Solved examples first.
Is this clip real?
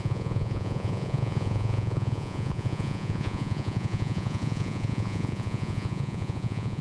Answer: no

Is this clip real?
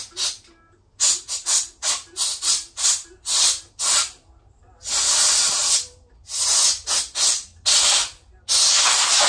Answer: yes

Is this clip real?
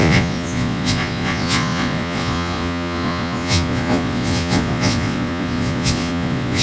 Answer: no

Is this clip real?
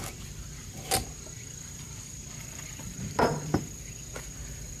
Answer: no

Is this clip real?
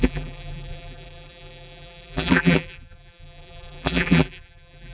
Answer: no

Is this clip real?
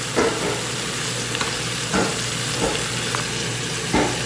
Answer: yes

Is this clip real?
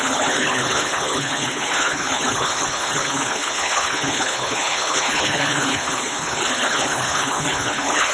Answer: no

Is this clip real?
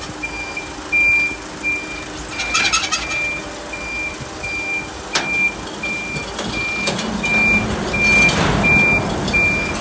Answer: yes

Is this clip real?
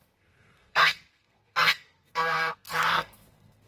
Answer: no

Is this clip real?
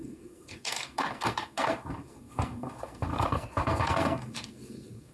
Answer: no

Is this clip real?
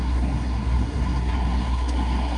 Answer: no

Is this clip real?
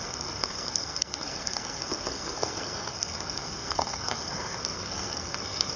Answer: no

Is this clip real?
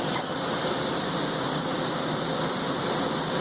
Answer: yes